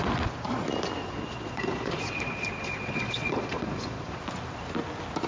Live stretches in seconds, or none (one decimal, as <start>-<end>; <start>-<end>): 0.0-1.0; 4.2-5.3